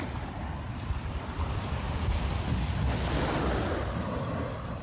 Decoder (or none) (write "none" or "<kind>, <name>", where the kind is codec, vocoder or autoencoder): none